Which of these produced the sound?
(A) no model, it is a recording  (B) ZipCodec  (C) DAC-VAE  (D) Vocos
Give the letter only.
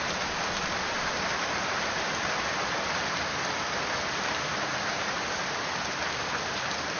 A